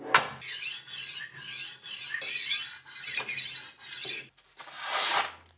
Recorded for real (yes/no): yes